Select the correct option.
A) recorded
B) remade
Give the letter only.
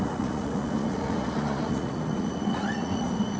B